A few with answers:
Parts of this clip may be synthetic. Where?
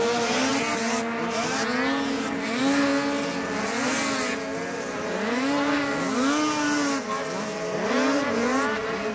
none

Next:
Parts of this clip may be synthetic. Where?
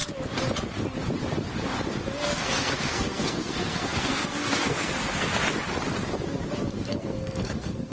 2.3-5.3 (codec, SNAC); 6.7-7.9